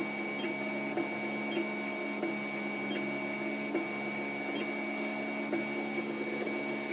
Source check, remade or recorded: recorded